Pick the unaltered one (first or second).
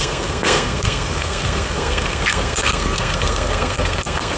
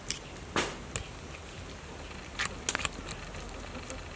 second